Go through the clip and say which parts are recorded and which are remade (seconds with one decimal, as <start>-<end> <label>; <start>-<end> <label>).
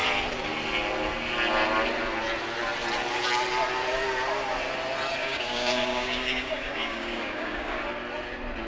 0.0-5.2 recorded; 5.2-7.8 remade; 7.8-8.7 recorded